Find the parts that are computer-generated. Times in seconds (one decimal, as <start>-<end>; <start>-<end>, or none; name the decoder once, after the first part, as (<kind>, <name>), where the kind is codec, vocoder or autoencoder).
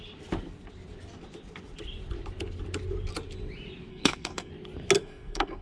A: 3.9-4.5 (codec, SNAC); 5.0-5.6